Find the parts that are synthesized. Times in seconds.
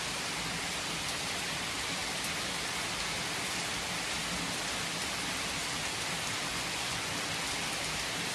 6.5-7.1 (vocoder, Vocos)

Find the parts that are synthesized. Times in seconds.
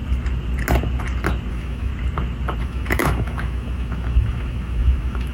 1.5-1.9 (autoencoder, DAC-VAE); 2.6-5.3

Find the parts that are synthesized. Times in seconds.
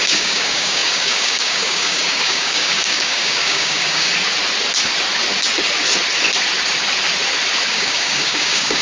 0.0-4.1 (codec, DAC); 7.7-8.8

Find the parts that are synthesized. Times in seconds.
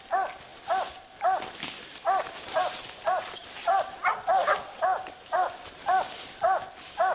none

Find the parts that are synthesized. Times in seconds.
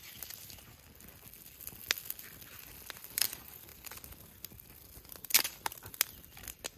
none